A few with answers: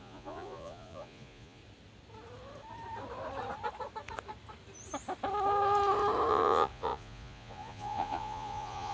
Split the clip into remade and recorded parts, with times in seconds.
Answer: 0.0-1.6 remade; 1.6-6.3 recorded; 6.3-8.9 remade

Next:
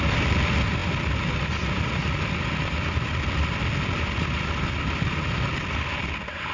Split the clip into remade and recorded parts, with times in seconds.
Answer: 0.0-6.5 recorded